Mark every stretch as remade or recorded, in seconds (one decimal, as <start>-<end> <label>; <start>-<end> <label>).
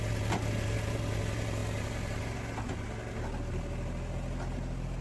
0.0-5.0 recorded